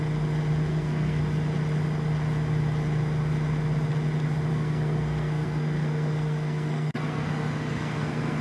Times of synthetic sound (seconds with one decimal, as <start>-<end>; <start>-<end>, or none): 0.7-1.2; 4.5-8.4